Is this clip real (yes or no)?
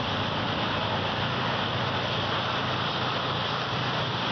yes